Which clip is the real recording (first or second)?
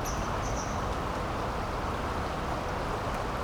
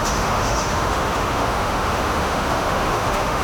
first